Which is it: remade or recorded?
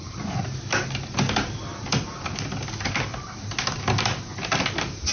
recorded